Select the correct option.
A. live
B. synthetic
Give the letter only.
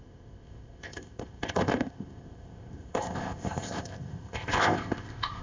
B